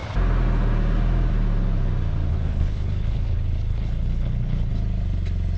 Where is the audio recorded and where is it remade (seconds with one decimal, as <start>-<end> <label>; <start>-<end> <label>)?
0.0-2.3 recorded; 2.3-4.7 remade; 4.7-5.6 recorded